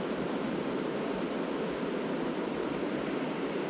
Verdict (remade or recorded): recorded